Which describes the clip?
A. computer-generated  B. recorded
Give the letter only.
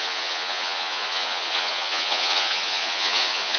A